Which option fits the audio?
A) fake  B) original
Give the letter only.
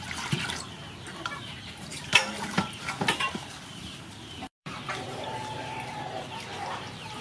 A